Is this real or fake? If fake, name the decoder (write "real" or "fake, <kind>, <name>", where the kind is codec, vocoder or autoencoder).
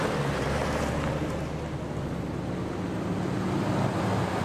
real